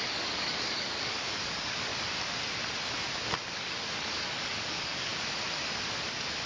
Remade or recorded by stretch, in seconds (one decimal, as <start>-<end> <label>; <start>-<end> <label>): 0.0-1.9 remade; 1.9-3.5 recorded; 3.5-5.1 remade; 5.1-6.5 recorded